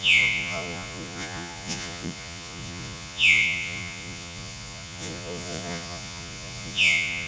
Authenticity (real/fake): fake